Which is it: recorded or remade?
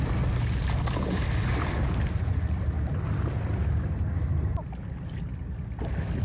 recorded